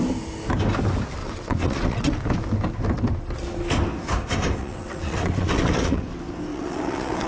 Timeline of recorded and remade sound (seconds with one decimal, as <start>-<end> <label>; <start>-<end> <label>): 0.0-1.2 recorded; 1.2-2.2 remade; 2.2-4.6 recorded; 4.6-6.0 remade; 6.0-6.5 recorded; 6.5-7.3 remade